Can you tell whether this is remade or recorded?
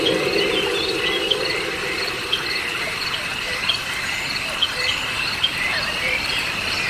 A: remade